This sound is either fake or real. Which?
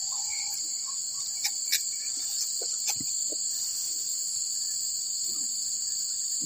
real